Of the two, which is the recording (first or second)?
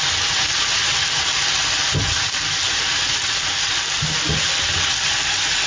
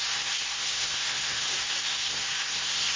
first